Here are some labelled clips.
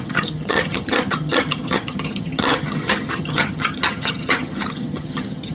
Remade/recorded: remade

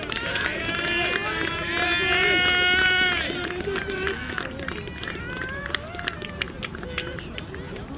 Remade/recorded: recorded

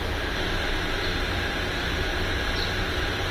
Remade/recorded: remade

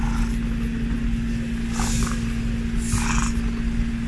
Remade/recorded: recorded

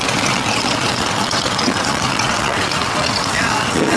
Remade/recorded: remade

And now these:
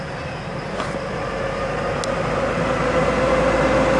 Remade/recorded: recorded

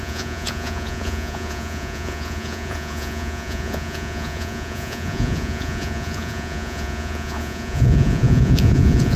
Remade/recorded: remade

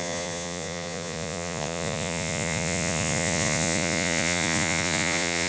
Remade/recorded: remade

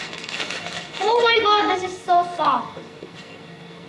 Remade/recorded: remade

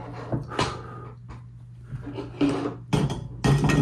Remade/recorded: recorded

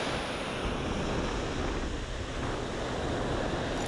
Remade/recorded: recorded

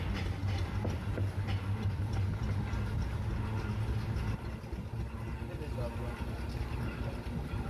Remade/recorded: recorded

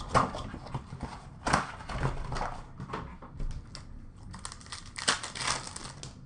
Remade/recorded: recorded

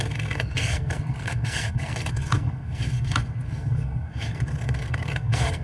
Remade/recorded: remade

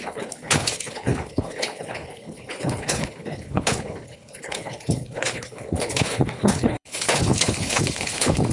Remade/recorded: remade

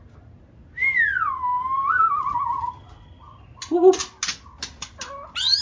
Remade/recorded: recorded